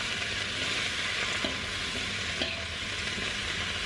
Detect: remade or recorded recorded